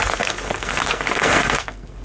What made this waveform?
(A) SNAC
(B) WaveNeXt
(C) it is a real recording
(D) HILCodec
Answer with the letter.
A